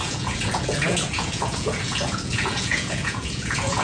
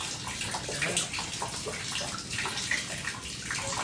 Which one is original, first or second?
second